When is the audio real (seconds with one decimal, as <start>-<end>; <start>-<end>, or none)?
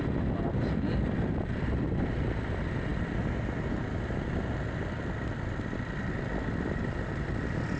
0.0-7.8